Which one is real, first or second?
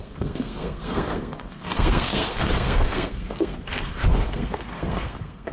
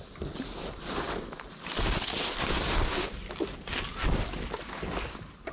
second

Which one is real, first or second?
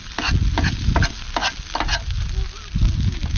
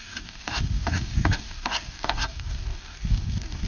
first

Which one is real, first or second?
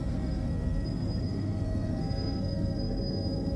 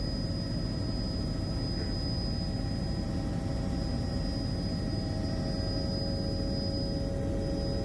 second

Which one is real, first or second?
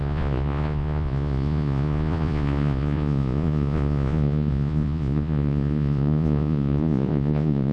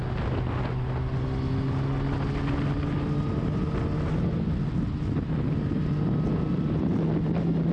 second